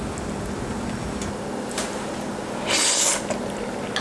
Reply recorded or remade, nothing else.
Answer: recorded